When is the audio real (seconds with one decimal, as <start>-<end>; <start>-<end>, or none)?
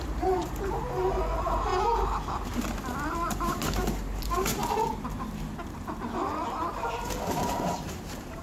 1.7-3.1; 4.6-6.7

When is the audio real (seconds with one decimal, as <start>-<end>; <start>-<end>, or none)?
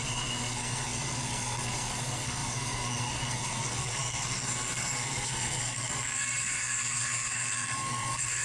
none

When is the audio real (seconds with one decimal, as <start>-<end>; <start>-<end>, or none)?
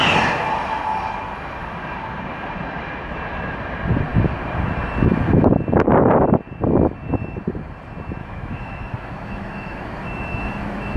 0.0-8.2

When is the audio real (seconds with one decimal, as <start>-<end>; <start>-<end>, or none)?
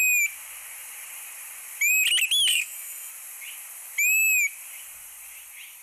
0.0-2.5; 3.1-5.8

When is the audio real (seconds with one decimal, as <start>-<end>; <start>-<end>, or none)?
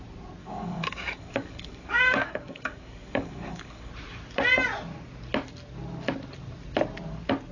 0.0-0.4; 3.9-7.5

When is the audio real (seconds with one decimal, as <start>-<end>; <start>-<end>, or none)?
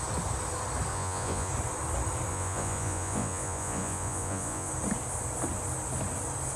0.0-0.9; 1.5-2.3; 4.7-6.6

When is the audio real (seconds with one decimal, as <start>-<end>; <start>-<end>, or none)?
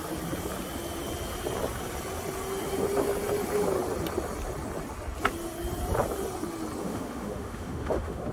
0.0-6.8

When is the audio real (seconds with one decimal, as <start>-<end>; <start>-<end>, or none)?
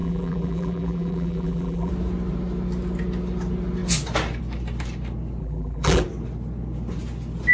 1.9-5.4; 6.0-7.5